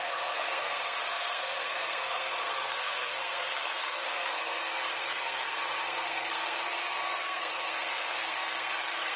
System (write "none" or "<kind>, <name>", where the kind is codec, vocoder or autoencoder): codec, SNAC